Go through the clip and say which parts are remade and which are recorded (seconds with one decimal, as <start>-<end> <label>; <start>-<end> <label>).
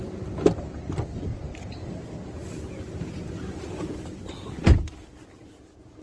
0.0-6.0 recorded